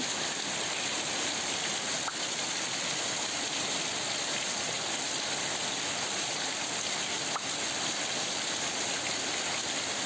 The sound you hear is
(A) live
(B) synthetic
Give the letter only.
A